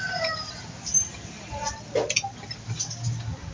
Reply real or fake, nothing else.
real